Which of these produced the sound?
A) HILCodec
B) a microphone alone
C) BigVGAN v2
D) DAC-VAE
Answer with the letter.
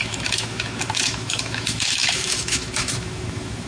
D